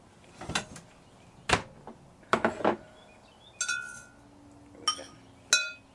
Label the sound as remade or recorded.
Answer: recorded